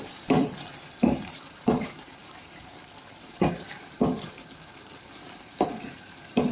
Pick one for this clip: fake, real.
fake